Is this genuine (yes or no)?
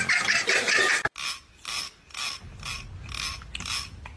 yes